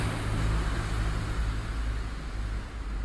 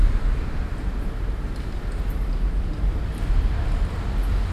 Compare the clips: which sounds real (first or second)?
first